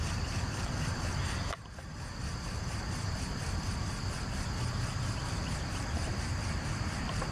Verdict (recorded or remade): remade